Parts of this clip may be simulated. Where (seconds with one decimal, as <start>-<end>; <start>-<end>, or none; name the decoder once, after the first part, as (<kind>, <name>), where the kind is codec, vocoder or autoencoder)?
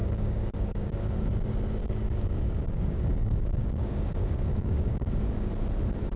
0.0-1.3 (codec, DAC); 1.8-5.5